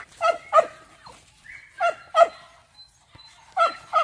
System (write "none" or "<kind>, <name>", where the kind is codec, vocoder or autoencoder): none